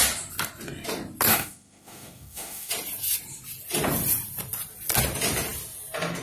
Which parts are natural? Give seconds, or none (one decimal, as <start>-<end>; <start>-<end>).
0.0-1.3; 2.7-6.2